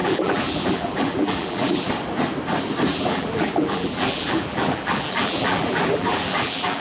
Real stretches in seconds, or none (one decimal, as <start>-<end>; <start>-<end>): 1.9-2.9